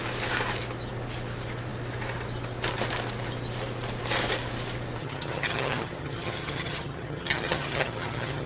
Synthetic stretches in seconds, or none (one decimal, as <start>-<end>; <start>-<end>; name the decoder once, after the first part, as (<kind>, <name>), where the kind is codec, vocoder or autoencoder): 5.0-8.5 (vocoder, HiFi-GAN)